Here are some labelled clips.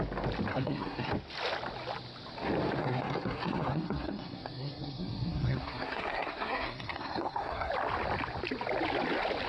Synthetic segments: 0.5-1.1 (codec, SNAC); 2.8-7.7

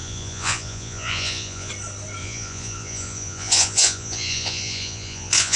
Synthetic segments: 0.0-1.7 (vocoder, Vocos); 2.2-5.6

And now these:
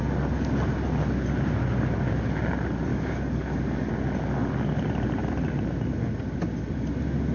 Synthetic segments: 2.9-3.9 (codec, DAC)

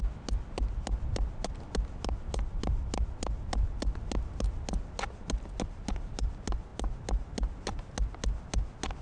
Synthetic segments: none

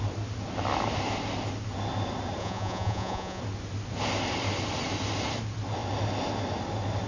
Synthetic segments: 2.4-3.4 (vocoder, Vocos)

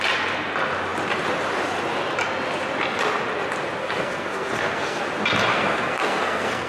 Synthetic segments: 3.8-5.0 (codec, SNAC); 5.5-6.7

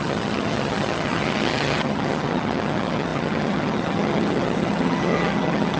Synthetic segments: 0.0-5.8 (vocoder, HiFi-GAN)